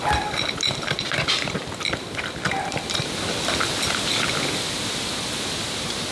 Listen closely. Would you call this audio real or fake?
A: real